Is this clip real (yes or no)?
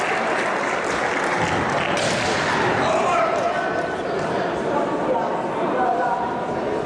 yes